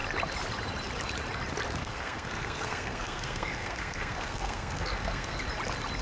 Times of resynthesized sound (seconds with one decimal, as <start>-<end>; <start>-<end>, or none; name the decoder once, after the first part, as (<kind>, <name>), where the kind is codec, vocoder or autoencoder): 1.8-5.4 (codec, SNAC)